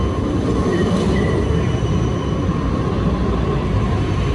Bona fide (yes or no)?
yes